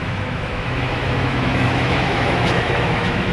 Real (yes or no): no